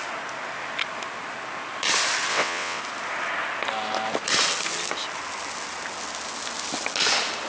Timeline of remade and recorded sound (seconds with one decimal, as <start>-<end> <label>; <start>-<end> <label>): 0.0-2.3 recorded; 2.3-2.8 remade; 2.8-7.5 recorded

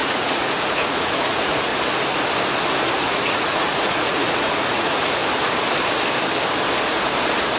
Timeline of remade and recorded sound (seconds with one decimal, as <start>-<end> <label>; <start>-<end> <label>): 0.0-1.7 remade; 1.7-2.9 recorded; 2.9-5.2 remade; 5.2-7.6 recorded

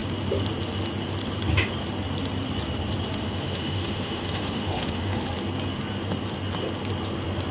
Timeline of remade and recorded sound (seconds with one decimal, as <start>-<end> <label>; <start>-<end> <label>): 0.0-3.2 recorded; 3.2-5.2 remade; 5.2-7.5 recorded

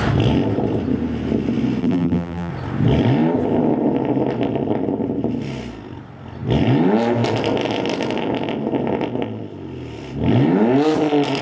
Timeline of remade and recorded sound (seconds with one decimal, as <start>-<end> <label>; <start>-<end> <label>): 0.0-1.8 recorded; 1.8-2.5 remade; 2.5-11.4 recorded